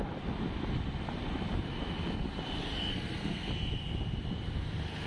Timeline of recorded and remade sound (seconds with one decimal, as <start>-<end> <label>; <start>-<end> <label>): 0.0-2.9 recorded; 2.9-3.5 remade; 3.5-5.1 recorded